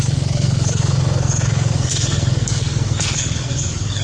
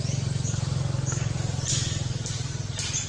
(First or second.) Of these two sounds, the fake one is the first